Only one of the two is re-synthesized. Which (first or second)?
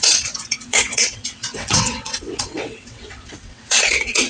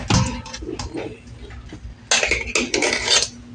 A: first